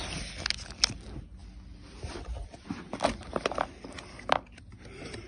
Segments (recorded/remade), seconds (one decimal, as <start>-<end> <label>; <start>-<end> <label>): 0.0-5.3 recorded